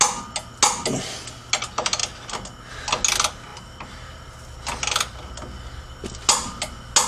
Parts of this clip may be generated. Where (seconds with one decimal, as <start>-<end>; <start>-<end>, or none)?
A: none